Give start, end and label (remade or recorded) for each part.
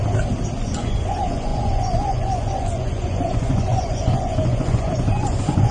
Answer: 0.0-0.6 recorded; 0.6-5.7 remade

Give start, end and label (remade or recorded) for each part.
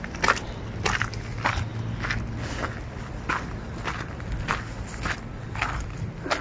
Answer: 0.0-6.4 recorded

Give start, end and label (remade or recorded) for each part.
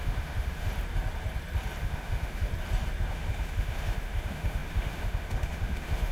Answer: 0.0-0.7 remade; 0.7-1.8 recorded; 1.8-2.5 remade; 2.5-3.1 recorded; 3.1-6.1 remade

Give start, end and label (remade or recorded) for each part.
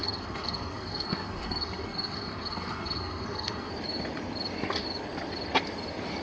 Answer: 0.0-3.7 remade; 3.7-6.2 recorded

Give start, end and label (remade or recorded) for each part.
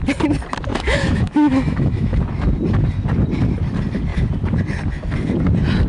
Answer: 0.0-0.7 recorded; 0.7-2.2 remade; 2.2-5.9 recorded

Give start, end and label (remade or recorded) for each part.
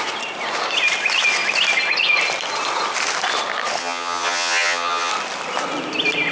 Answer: 0.0-3.8 recorded; 3.8-5.1 remade; 5.1-6.3 recorded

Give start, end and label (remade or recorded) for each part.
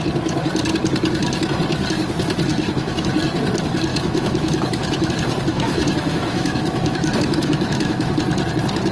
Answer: 0.0-2.5 recorded; 2.5-3.1 remade; 3.1-3.9 recorded; 3.9-5.1 remade; 5.1-5.5 recorded; 5.5-8.1 remade; 8.1-8.9 recorded